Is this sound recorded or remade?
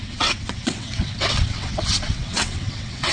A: remade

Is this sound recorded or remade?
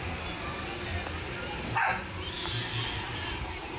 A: recorded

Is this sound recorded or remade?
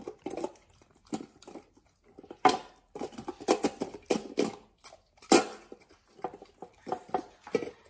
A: recorded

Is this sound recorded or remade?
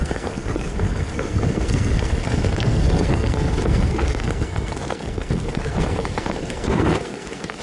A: remade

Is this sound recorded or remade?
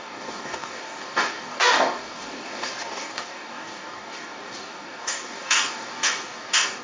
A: remade